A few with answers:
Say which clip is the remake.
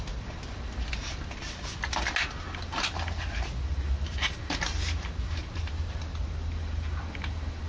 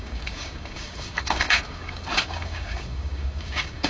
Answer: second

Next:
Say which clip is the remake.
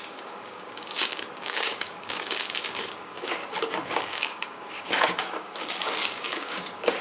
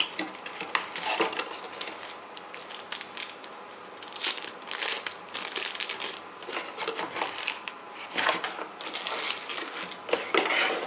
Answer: first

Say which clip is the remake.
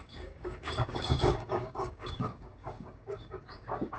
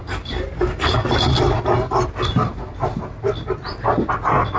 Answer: first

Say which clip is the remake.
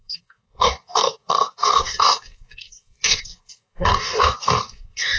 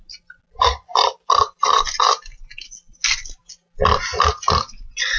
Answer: first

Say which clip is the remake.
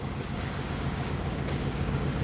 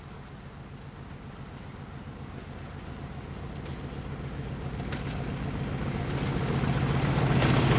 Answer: first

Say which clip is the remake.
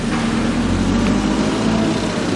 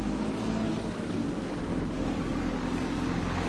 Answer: second